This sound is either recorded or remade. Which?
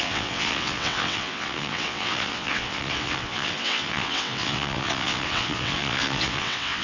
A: remade